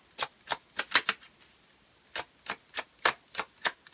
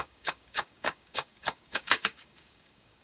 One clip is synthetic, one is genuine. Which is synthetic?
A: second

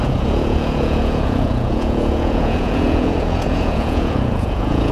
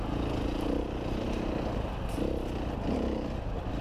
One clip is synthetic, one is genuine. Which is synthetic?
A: first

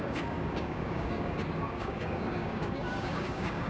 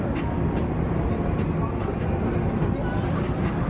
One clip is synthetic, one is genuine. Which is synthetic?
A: first